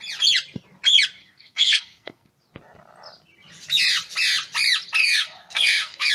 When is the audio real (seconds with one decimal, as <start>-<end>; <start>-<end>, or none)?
0.0-1.2; 2.3-5.0

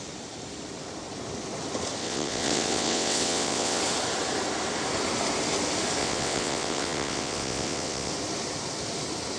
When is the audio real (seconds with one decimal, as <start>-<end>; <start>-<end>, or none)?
0.0-2.0; 3.8-6.0; 8.1-9.4

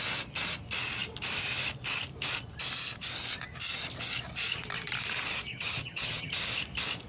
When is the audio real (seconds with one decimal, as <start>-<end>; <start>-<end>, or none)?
0.0-5.5; 6.3-7.1

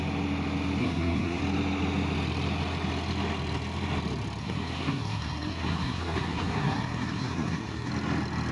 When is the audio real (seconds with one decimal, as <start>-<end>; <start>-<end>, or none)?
0.0-0.8; 1.4-4.4; 7.9-8.5